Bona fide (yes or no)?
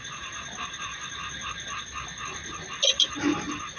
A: yes